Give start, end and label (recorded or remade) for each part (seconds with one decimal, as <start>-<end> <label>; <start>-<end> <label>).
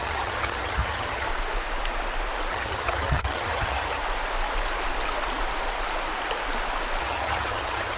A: 0.0-1.3 remade; 1.3-2.5 recorded; 2.5-4.0 remade; 4.0-7.0 recorded; 7.0-8.0 remade